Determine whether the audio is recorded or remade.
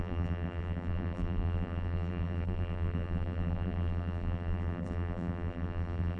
remade